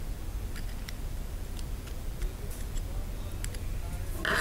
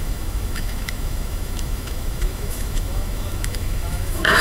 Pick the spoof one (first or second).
second